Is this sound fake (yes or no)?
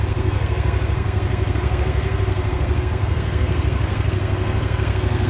yes